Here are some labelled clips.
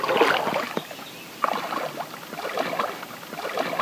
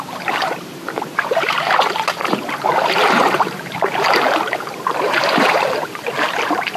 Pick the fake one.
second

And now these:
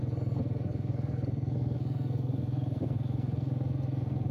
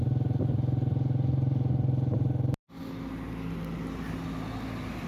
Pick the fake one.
first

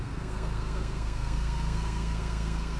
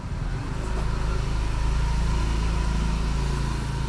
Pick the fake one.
first